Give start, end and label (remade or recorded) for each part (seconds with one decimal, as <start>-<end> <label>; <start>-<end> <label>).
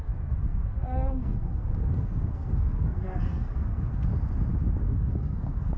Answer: 0.0-4.1 remade; 4.1-4.8 recorded; 4.8-5.8 remade